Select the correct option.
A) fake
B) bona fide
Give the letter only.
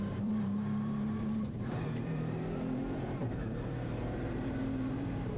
A